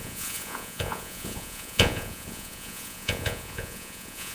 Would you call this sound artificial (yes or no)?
yes